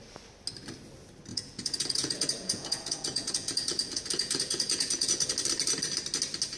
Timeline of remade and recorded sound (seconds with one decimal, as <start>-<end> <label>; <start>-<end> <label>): 0.0-1.3 recorded; 1.3-5.3 remade; 5.3-6.6 recorded